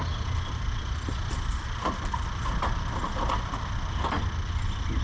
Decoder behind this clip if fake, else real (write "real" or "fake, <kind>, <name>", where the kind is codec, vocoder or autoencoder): real